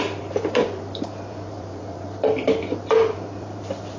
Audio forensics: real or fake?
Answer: fake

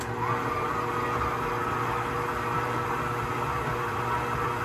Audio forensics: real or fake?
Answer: real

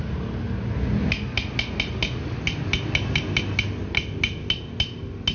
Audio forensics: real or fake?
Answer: real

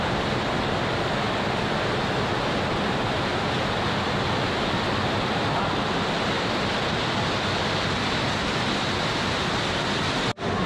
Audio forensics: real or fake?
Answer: real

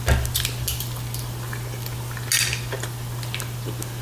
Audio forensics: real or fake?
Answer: real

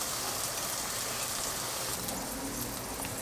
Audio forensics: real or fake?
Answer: real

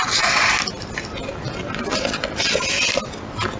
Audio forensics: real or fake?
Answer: real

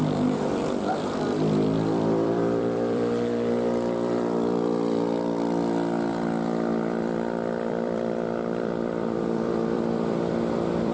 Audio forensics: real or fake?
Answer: fake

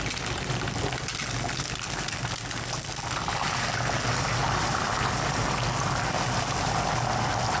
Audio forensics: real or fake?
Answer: real